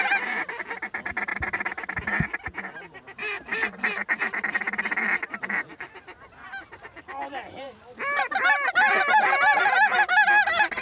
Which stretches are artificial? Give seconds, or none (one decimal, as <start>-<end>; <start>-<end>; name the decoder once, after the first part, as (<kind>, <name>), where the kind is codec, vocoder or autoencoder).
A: 1.3-1.9 (vocoder, BigVGAN v2); 6.5-7.7